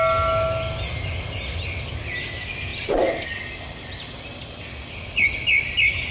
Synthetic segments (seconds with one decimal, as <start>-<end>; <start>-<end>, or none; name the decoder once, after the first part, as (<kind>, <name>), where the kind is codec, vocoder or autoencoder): none